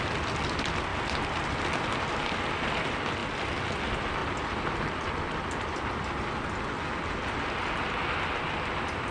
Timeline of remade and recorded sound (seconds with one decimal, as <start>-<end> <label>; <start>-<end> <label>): 0.0-9.1 recorded